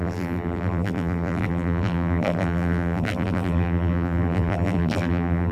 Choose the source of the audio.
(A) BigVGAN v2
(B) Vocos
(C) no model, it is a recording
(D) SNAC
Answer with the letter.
A